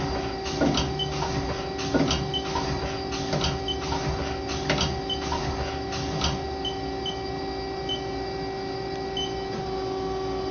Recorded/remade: recorded